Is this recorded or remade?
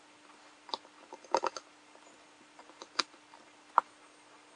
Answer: recorded